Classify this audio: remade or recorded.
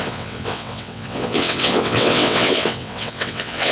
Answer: remade